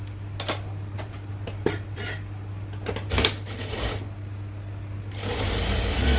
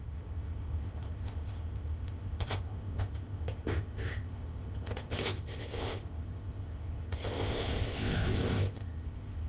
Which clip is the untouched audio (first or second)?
first